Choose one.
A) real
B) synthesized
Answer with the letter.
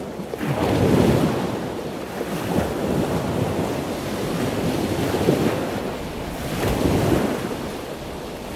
A